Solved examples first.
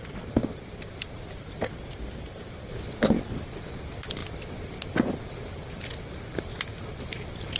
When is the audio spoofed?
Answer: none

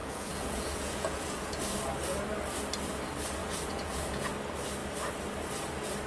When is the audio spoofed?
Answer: 0.0-1.6 (vocoder, Vocos); 3.4-4.3

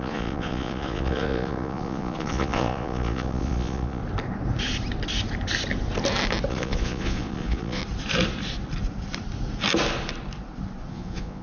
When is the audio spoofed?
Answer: 0.0-4.0 (vocoder, Vocos); 6.5-7.8; 10.9-11.4

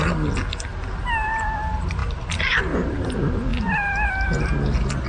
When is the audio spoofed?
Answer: none

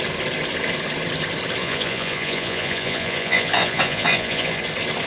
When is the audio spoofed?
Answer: 1.6-4.6 (vocoder, Vocos)